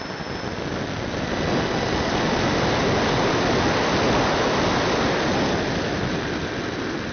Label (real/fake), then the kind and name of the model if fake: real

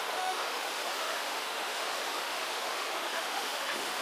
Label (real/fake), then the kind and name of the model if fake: fake, autoencoder, DAC-VAE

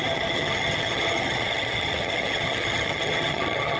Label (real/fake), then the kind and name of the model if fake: fake, vocoder, HiFi-GAN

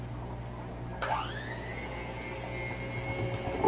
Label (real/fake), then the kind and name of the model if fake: real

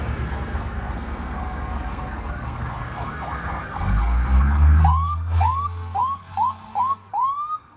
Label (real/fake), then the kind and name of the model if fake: fake, codec, SNAC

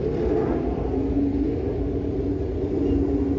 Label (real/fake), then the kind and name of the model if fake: real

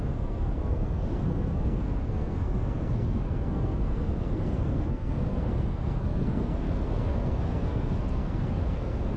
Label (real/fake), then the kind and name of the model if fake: fake, codec, SNAC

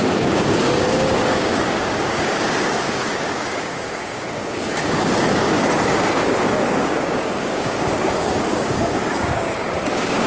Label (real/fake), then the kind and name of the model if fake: fake, codec, DAC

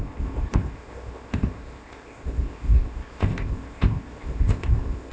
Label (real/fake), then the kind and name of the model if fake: fake, codec, ZipCodec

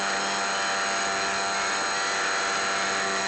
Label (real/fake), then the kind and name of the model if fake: real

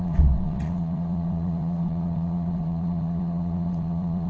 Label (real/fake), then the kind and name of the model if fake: fake, vocoder, WaveNeXt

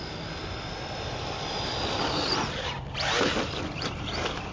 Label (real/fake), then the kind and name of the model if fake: real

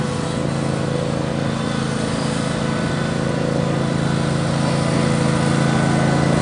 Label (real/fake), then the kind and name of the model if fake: real